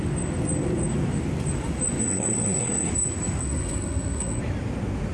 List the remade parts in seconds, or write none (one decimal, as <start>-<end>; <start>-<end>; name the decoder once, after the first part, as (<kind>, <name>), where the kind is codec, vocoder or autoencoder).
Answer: 2.0-2.9 (codec, SNAC); 3.4-4.4

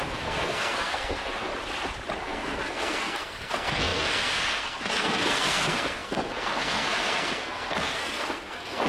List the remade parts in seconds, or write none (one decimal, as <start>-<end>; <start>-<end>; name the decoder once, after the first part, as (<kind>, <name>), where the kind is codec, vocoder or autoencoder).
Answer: 0.0-1.5 (codec, SNAC); 2.2-8.9

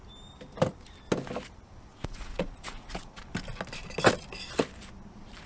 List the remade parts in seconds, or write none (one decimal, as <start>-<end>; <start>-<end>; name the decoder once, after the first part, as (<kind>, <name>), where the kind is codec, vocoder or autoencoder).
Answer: 1.9-3.2 (vocoder, Vocos)

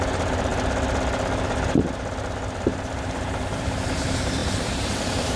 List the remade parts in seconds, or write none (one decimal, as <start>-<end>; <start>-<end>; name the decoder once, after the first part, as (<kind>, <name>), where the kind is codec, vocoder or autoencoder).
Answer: 0.0-0.5 (vocoder, BigVGAN v2); 2.6-5.4

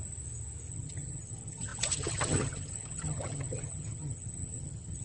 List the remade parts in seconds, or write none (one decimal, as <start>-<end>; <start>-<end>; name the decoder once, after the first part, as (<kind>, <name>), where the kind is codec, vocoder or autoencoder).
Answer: 0.7-5.0 (vocoder, HiFi-GAN)

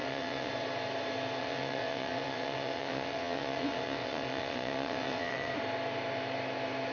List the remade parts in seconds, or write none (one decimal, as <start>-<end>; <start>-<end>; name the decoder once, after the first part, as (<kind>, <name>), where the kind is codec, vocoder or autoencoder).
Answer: 0.0-0.5 (vocoder, WaveNeXt); 1.4-5.5

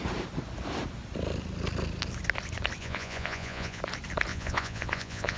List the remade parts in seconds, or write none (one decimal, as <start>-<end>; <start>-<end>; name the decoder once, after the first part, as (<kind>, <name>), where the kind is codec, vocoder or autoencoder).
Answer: 2.8-3.8 (vocoder, Vocos); 4.3-5.4